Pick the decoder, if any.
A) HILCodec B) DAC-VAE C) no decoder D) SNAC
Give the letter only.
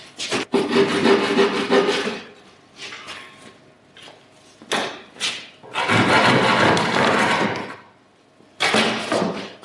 C